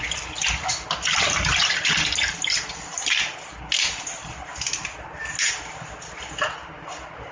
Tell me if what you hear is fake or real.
real